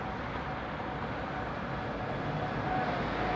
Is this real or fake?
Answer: real